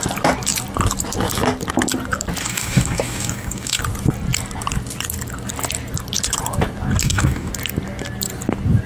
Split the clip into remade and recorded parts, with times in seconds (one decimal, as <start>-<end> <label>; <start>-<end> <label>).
0.0-2.4 recorded; 2.4-3.8 remade; 3.8-7.0 recorded; 7.0-7.5 remade; 7.5-8.9 recorded